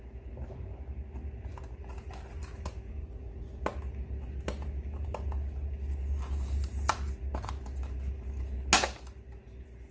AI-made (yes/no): no